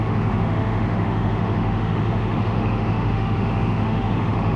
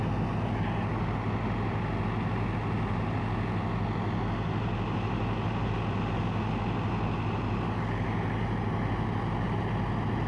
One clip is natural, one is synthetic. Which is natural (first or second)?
second